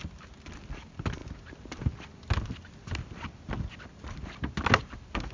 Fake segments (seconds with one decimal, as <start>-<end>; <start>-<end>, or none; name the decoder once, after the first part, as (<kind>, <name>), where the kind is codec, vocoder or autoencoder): none

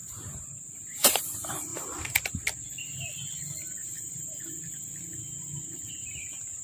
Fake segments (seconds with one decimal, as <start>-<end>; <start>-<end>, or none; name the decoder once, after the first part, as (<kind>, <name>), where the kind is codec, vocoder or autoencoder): 0.0-1.2 (vocoder, BigVGAN v2); 3.8-4.5